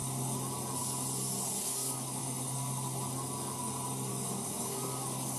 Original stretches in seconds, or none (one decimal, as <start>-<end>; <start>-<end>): 0.0-1.6; 2.2-4.1